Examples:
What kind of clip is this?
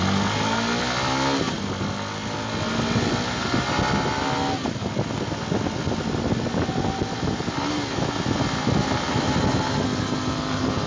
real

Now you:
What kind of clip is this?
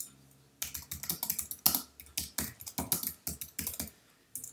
real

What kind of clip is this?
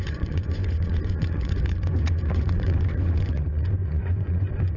fake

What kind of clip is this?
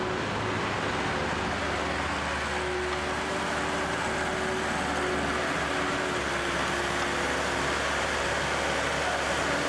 real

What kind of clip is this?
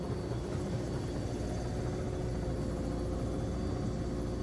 real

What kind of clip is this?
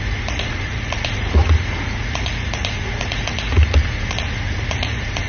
fake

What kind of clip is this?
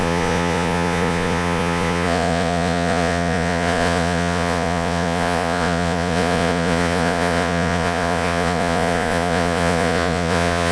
fake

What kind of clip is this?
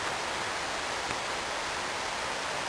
real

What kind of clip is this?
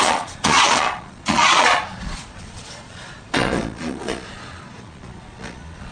fake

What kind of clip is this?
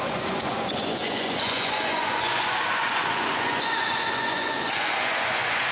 fake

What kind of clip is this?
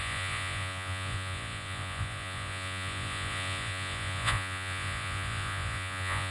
fake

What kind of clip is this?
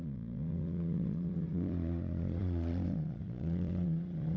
fake